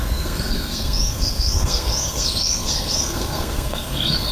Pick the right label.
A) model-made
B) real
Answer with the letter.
A